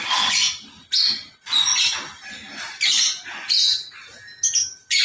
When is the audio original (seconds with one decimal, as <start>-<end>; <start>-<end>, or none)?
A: 0.0-5.0